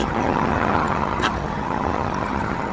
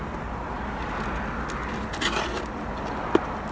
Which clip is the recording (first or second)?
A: second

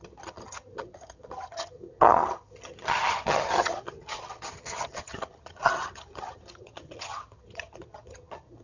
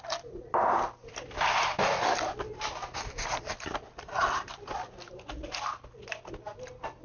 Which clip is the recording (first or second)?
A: second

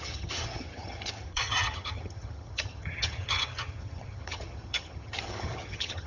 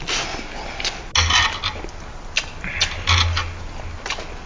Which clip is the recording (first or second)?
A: second